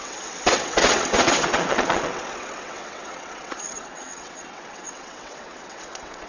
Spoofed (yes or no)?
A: yes